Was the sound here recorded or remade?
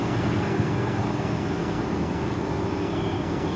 remade